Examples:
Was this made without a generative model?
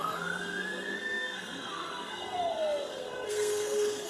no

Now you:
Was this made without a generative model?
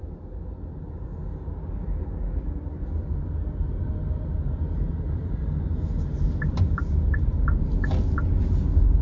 yes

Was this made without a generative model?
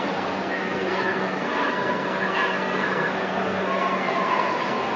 no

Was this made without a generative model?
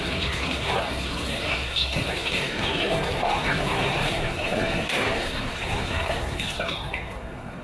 no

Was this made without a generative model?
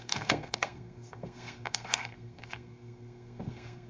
no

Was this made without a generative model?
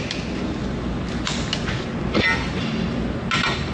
yes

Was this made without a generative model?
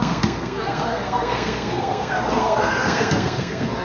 no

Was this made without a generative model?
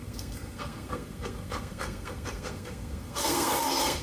no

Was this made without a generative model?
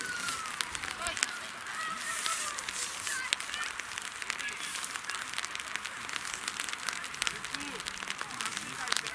yes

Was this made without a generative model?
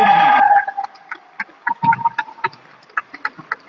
yes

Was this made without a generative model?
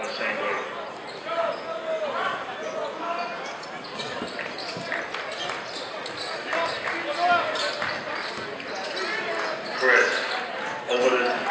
yes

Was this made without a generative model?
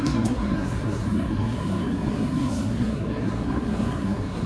no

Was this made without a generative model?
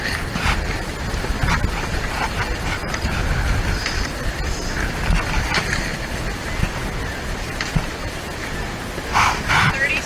yes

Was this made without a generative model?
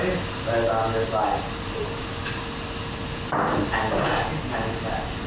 yes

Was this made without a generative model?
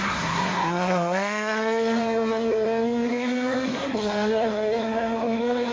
no